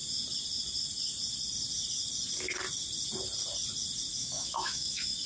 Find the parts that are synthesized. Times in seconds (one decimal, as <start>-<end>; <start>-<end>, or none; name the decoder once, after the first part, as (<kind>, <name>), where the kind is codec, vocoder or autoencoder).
4.1-5.3 (autoencoder, DAC-VAE)